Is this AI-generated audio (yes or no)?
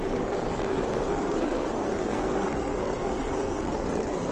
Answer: yes